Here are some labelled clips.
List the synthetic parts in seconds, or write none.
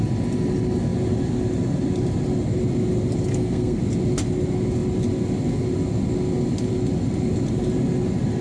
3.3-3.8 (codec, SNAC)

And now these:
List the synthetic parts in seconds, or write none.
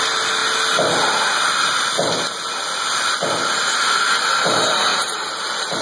4.9-5.8 (vocoder, BigVGAN v2)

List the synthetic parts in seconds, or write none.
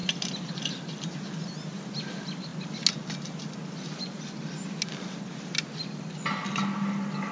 none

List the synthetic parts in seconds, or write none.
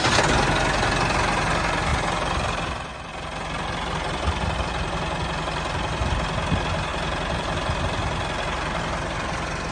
none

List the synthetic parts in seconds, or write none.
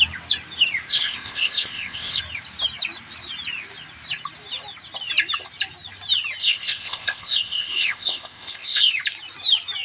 0.9-2.2 (codec, ZipCodec); 6.4-8.9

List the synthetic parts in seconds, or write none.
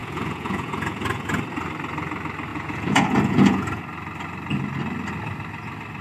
0.0-1.4 (vocoder, Vocos); 2.5-3.8